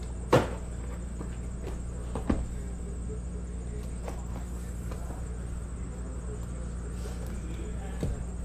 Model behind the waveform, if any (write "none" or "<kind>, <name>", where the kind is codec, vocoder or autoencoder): none